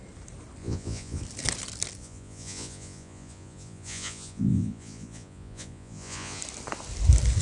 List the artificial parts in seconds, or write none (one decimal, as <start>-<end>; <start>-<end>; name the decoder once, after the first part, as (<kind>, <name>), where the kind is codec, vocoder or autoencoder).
0.6-1.2 (vocoder, Vocos); 2.0-6.4